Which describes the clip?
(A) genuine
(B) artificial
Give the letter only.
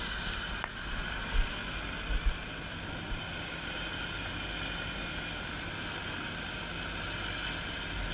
A